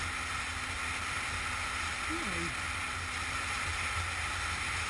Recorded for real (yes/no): yes